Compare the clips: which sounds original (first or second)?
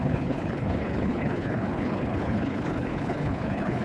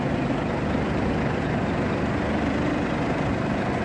second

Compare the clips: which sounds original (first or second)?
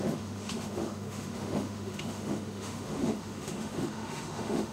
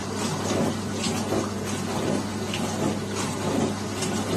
second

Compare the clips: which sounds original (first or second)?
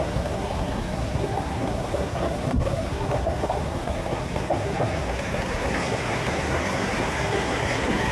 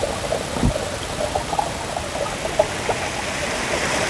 second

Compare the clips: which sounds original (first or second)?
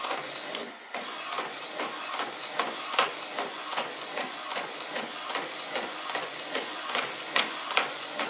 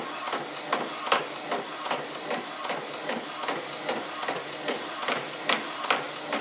second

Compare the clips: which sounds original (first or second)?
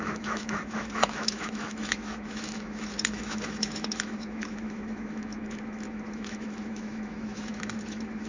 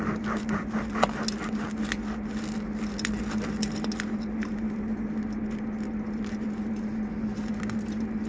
second